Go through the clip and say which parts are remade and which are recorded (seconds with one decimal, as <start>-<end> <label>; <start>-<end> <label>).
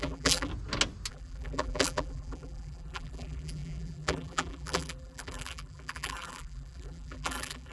0.0-0.5 remade; 0.5-1.1 recorded; 1.1-7.7 remade